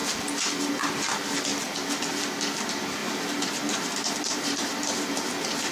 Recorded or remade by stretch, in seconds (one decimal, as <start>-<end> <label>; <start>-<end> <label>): 0.0-3.0 recorded; 3.0-5.7 remade